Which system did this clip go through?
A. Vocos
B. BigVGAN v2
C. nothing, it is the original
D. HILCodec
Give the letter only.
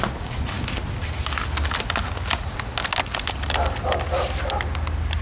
C